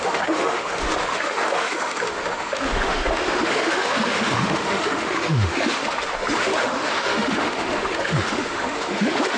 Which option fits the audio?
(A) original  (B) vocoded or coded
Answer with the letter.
B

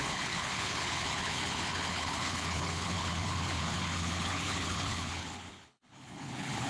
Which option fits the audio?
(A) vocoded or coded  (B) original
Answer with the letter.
A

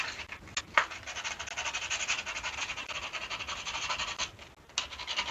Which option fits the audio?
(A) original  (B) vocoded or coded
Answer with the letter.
A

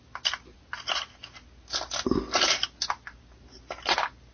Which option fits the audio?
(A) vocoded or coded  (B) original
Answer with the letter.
B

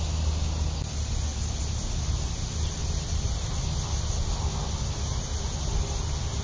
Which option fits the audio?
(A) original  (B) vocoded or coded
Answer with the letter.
A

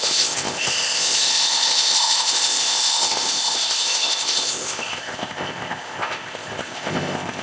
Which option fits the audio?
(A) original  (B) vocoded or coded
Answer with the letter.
B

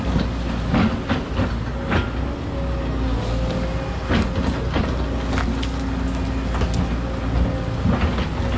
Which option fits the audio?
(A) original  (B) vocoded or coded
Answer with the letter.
A